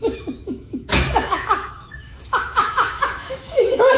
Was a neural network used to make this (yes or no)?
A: yes